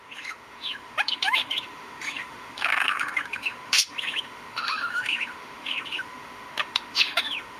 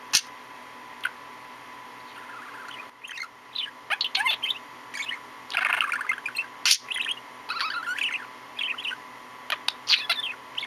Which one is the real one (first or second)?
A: second